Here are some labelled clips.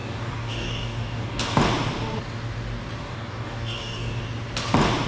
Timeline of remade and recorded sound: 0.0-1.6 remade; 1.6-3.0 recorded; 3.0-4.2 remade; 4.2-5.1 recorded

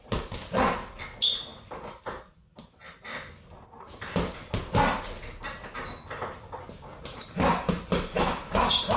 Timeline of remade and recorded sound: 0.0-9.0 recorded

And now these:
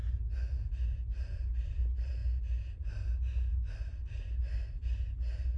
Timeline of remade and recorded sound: 0.0-5.6 recorded

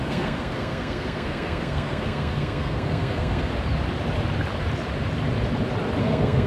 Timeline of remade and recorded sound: 0.0-3.5 remade; 3.5-6.0 recorded; 6.0-6.5 remade

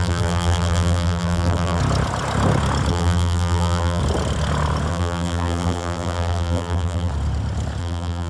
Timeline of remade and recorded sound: 0.0-1.8 remade; 1.8-2.9 recorded; 2.9-4.0 remade; 4.0-4.9 recorded; 4.9-7.1 remade; 7.1-7.8 recorded; 7.8-8.3 remade